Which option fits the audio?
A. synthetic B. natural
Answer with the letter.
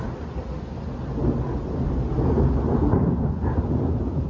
B